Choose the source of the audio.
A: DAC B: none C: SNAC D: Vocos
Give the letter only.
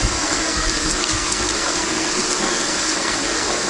C